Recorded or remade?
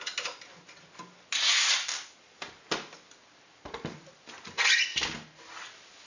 recorded